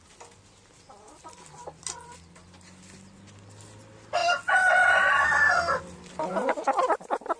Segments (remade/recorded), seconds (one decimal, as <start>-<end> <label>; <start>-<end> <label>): 0.0-7.4 recorded